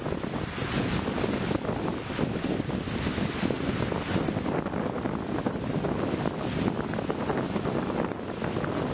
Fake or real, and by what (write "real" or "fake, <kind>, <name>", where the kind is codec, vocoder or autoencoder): real